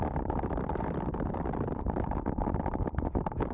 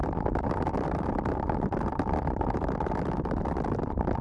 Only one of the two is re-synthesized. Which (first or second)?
first